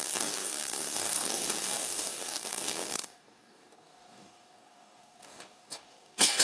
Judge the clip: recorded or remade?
remade